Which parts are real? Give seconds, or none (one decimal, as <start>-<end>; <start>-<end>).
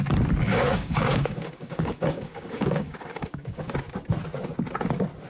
0.0-0.4; 3.6-5.3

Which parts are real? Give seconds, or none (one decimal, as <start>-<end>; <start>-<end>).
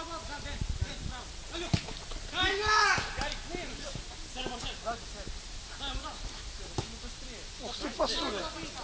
0.0-8.8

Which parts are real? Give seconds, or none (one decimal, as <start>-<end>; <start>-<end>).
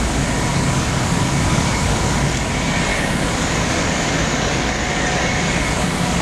0.0-0.5; 2.5-2.9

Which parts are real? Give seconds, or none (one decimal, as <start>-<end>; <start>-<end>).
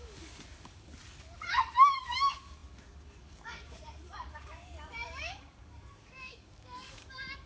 1.0-1.5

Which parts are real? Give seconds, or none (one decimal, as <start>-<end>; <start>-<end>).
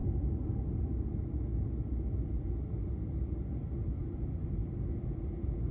0.0-5.7